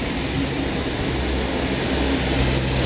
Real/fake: real